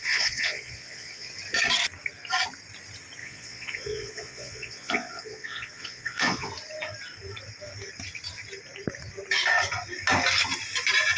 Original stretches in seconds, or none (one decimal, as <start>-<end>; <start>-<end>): 1.3-3.2; 6.5-11.2